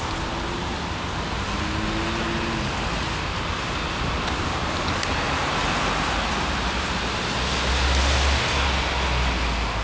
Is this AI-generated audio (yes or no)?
no